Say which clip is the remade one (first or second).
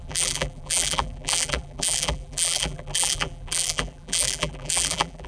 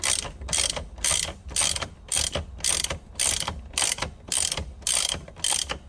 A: first